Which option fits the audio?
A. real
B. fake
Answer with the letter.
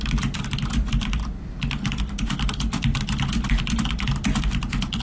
A